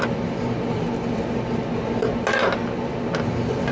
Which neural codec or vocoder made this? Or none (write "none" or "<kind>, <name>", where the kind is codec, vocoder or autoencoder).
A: none